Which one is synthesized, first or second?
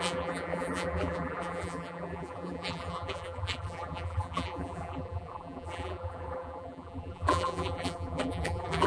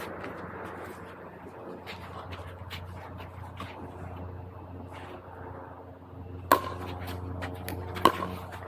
first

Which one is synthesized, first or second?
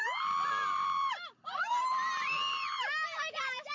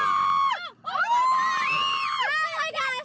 first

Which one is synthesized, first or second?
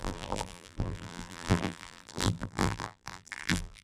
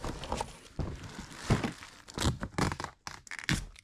first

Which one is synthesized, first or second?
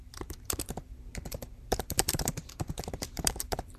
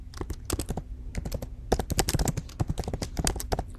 first